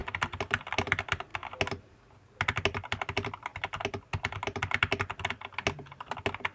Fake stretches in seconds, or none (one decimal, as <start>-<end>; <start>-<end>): none